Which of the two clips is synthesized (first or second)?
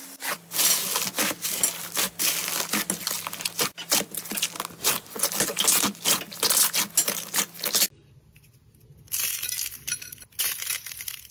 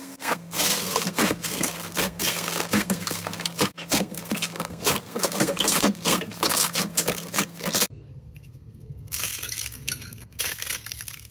second